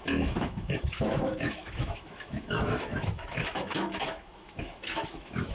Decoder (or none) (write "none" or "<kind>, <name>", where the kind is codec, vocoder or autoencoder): autoencoder, DAC-VAE